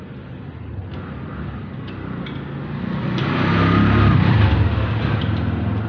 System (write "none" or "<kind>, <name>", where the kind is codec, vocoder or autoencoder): none